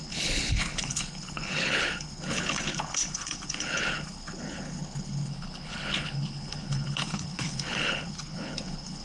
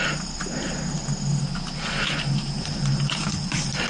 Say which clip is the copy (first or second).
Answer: first